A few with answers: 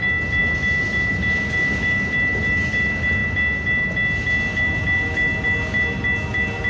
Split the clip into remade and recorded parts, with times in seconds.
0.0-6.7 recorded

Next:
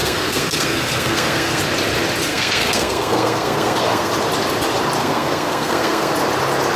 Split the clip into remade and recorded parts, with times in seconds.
0.0-1.6 remade; 1.6-2.3 recorded; 2.3-4.1 remade; 4.1-5.0 recorded; 5.0-6.1 remade; 6.1-6.8 recorded